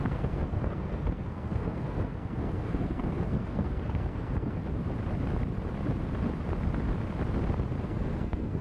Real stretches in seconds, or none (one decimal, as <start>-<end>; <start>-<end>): 4.6-7.8